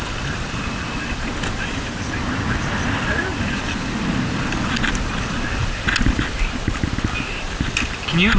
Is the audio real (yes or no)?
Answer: yes